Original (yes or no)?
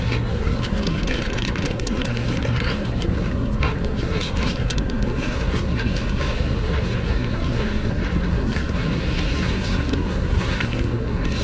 no